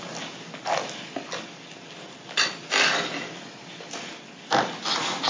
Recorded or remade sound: recorded